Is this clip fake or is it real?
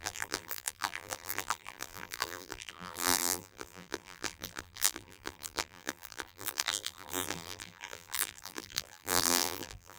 fake